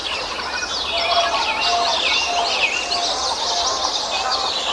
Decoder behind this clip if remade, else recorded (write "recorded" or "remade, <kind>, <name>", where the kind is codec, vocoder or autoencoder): recorded